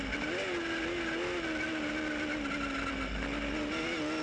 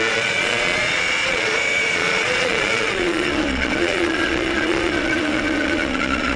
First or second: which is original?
first